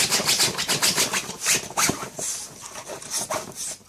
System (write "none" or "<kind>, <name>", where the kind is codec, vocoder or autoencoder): none